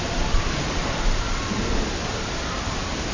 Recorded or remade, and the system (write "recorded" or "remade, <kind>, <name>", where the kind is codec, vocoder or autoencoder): recorded